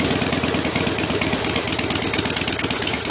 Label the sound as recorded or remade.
recorded